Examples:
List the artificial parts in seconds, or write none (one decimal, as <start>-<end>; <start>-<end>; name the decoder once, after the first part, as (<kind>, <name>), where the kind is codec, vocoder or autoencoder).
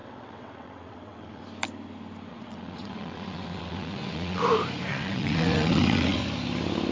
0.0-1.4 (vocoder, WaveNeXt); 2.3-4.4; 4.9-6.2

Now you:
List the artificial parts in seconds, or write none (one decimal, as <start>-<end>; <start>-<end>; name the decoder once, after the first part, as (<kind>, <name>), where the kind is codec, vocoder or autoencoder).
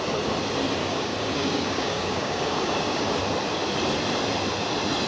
0.8-3.2 (codec, DAC)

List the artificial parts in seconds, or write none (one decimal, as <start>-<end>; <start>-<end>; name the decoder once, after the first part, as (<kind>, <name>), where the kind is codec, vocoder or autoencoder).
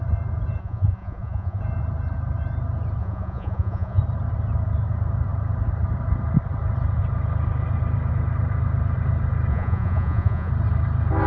0.6-1.6 (vocoder, Vocos); 3.0-4.0; 9.5-10.5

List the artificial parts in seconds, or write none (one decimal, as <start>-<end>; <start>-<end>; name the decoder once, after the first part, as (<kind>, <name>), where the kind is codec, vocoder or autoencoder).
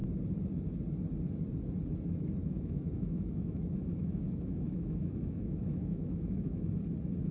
2.4-6.7 (autoencoder, DAC-VAE)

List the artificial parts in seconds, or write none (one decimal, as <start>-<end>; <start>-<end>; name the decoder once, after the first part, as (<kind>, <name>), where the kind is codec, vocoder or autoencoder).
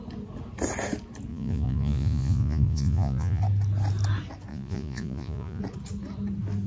1.3-3.4 (vocoder, Vocos); 4.5-5.6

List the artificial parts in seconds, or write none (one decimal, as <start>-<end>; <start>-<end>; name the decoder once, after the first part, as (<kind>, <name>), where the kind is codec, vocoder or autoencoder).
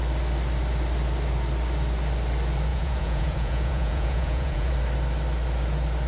2.7-4.7 (vocoder, Vocos)